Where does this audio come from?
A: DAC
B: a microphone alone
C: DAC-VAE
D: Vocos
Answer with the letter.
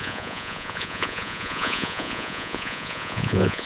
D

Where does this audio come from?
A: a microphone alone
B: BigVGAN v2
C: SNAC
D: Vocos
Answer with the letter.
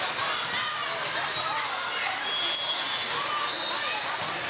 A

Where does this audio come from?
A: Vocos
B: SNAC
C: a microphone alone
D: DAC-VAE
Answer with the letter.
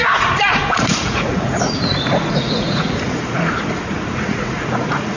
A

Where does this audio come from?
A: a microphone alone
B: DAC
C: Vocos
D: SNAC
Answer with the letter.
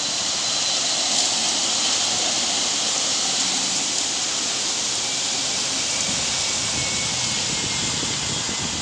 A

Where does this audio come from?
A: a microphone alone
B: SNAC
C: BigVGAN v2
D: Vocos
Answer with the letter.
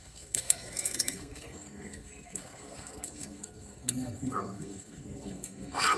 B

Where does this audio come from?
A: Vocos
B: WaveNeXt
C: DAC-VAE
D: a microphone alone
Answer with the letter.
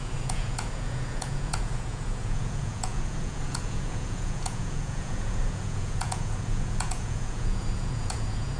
A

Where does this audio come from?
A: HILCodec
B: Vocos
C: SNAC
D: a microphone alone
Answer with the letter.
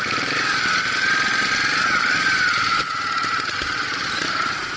D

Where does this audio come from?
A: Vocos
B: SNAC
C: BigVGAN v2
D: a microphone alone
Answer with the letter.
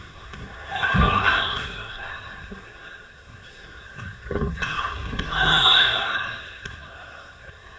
B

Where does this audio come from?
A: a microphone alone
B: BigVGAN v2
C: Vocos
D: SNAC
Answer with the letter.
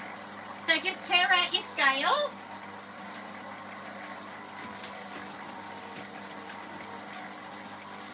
A